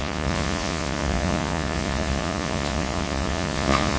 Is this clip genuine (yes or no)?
no